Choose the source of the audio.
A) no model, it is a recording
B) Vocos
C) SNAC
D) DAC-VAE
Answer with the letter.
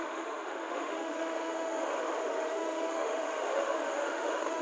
D